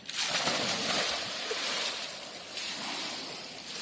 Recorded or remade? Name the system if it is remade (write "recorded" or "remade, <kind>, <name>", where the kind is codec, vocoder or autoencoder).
recorded